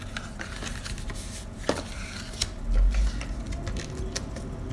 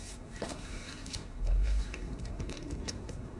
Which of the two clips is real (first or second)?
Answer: first